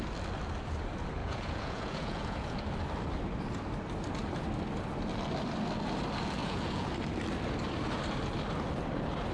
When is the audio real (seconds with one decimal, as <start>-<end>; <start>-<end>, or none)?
0.0-1.2; 2.6-6.4; 6.9-9.3